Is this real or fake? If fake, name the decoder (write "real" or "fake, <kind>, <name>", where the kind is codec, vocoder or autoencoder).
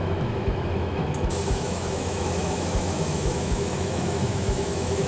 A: fake, autoencoder, DAC-VAE